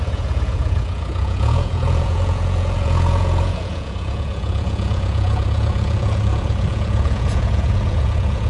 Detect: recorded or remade remade